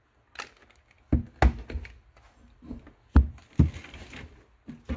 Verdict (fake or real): real